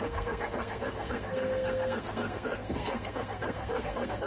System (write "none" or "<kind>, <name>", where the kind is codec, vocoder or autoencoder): codec, SNAC